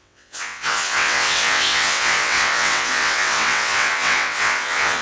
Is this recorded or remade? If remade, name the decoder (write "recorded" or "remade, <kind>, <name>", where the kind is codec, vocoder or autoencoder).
remade, vocoder, WaveNeXt